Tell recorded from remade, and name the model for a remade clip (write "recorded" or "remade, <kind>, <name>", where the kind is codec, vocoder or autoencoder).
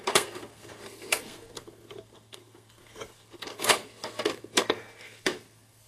remade, codec, SNAC